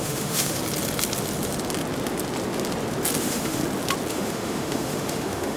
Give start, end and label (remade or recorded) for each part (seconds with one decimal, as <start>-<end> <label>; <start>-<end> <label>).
0.0-0.6 remade; 0.6-3.2 recorded; 3.2-3.6 remade; 3.6-4.1 recorded; 4.1-5.6 remade

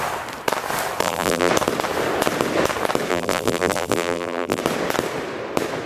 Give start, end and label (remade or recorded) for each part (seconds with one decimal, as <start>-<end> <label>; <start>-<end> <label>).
0.0-1.0 recorded; 1.0-1.5 remade; 1.5-3.1 recorded; 3.1-4.6 remade; 4.6-5.9 recorded

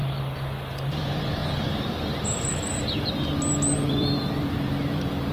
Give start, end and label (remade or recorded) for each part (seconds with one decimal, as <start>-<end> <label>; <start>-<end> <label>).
0.0-0.9 recorded; 0.9-5.3 remade

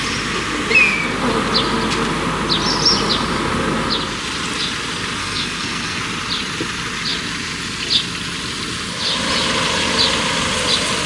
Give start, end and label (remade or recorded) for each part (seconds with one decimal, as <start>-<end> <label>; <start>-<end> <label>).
0.0-5.2 recorded; 5.2-6.0 remade; 6.0-11.1 recorded

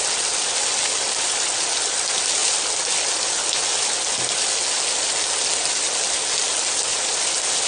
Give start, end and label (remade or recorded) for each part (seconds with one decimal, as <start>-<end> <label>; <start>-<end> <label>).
0.0-7.7 recorded